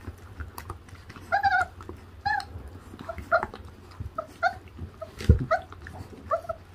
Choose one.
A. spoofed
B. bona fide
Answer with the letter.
B